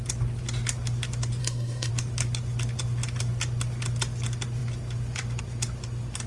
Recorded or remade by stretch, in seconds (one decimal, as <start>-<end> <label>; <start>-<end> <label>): 0.0-1.4 recorded; 1.4-1.9 remade; 1.9-6.3 recorded